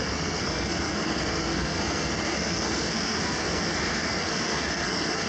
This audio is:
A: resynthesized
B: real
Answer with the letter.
A